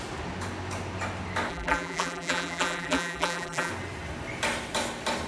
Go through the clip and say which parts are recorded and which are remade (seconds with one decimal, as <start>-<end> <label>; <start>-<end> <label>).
0.0-1.5 recorded; 1.5-3.7 remade; 3.7-5.3 recorded